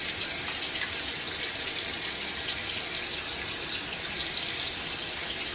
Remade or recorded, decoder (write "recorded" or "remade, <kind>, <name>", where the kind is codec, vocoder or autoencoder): recorded